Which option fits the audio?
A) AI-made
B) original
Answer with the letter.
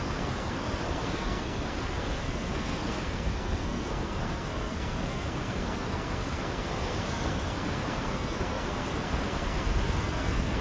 A